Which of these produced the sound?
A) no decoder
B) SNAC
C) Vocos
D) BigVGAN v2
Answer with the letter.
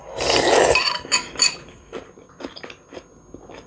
A